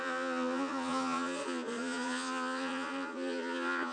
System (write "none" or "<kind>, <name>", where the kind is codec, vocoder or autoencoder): vocoder, Vocos